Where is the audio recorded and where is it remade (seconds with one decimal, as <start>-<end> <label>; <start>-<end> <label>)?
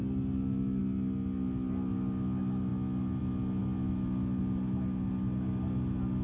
0.0-6.2 recorded